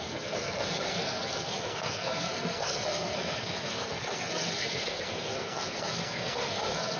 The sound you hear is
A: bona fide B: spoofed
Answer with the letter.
B